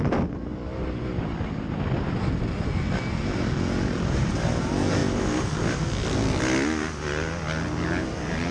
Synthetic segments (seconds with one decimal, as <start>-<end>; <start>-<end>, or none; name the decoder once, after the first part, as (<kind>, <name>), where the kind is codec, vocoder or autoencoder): none